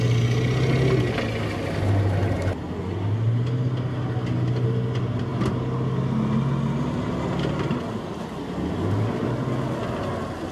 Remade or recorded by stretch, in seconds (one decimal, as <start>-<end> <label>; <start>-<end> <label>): 0.0-10.5 recorded